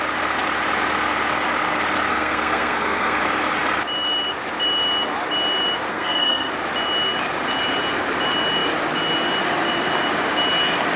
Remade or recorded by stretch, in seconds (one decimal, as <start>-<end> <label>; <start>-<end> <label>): 0.0-2.1 recorded; 2.1-3.2 remade; 3.2-5.9 recorded; 5.9-6.5 remade; 6.5-11.0 recorded